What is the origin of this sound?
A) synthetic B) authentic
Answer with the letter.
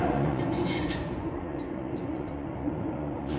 A